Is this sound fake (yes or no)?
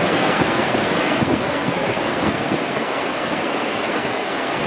yes